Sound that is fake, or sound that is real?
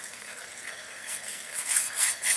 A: fake